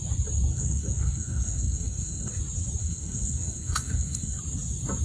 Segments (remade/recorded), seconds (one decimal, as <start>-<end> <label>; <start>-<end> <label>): 0.0-0.5 recorded; 0.5-2.4 remade; 2.4-2.8 recorded; 2.8-4.4 remade; 4.4-5.0 recorded